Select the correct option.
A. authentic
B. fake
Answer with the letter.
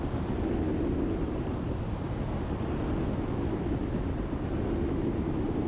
A